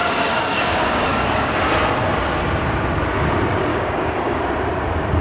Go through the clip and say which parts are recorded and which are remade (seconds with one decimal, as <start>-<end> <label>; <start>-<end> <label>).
0.0-1.7 remade; 1.7-3.7 recorded; 3.7-4.4 remade; 4.4-5.2 recorded

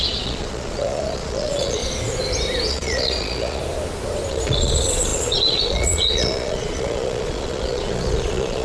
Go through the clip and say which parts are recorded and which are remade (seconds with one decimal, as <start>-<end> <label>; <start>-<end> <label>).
0.0-1.8 remade; 1.8-2.7 recorded; 2.7-3.6 remade; 3.6-4.3 recorded; 4.3-8.6 remade

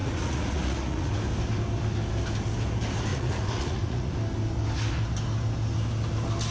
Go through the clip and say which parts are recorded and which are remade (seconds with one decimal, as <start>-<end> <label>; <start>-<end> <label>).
0.0-1.1 remade; 1.1-3.1 recorded; 3.1-4.1 remade; 4.1-6.5 recorded

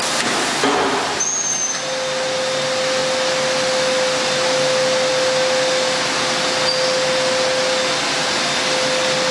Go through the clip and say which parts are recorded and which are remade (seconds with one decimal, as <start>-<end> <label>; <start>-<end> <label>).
0.0-9.3 recorded

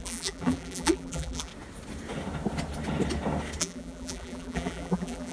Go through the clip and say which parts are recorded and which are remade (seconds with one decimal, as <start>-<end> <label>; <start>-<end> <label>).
0.0-1.5 remade; 1.5-3.6 recorded; 3.6-5.3 remade

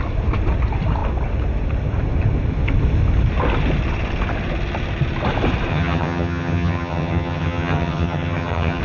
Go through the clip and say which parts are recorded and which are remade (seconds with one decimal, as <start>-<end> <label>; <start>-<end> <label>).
0.0-5.7 recorded; 5.7-8.8 remade